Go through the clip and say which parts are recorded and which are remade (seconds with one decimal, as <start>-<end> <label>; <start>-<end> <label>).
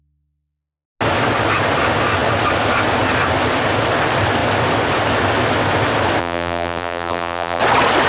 0.0-6.2 recorded; 6.2-7.6 remade; 7.6-8.1 recorded